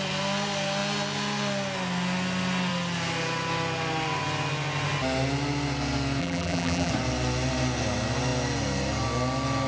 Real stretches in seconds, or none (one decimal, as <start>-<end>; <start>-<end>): 0.0-6.2; 6.9-9.7